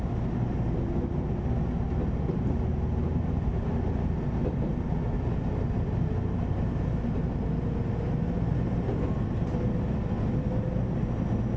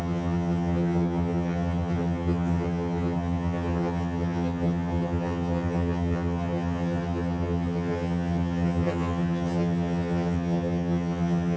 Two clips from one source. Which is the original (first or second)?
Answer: first